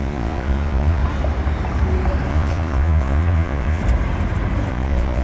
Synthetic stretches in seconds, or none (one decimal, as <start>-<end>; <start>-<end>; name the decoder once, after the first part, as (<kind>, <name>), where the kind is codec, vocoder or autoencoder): 0.0-1.0 (vocoder, Vocos); 2.3-3.8; 4.7-5.2